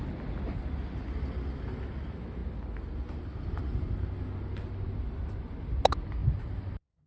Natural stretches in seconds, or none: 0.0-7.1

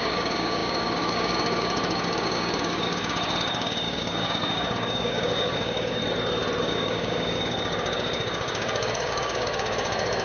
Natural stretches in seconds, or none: 6.0-6.6